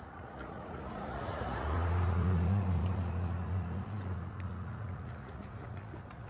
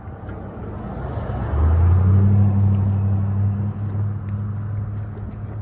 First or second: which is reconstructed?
first